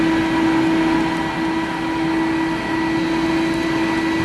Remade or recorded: recorded